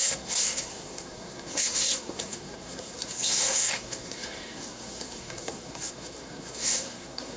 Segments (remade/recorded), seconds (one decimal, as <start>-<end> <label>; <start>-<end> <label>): 0.0-7.4 remade